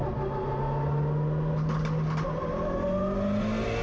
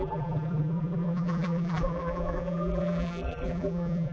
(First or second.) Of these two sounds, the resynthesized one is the second